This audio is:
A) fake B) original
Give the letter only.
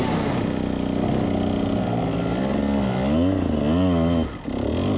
B